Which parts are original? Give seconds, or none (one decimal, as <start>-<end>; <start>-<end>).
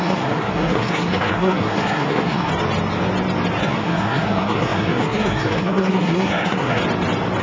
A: 2.5-3.6; 6.8-7.4